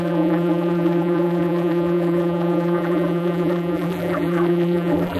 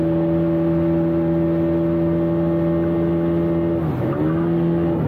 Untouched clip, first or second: second